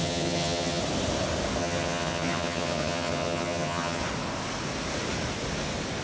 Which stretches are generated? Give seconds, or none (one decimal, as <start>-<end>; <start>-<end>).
0.0-0.8; 1.6-4.0